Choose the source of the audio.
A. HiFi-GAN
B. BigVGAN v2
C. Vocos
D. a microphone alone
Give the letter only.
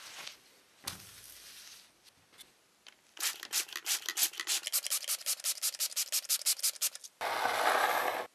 D